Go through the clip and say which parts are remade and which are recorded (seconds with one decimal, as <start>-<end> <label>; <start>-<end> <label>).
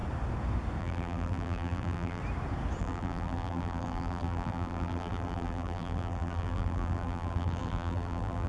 0.0-0.8 recorded; 0.8-2.2 remade; 2.2-2.8 recorded; 2.8-8.5 remade